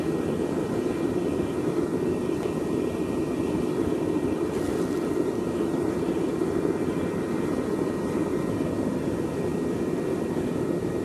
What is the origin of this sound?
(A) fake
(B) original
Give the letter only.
B